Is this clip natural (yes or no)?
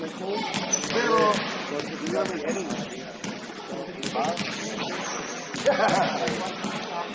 yes